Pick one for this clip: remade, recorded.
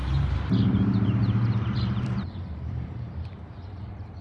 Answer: remade